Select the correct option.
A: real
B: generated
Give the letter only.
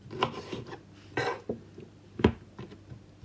A